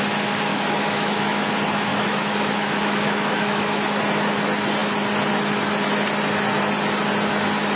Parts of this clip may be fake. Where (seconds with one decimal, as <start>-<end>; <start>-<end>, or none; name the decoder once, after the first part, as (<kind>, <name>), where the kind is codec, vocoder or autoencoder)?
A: 0.5-1.5 (autoencoder, DAC-VAE); 1.9-4.0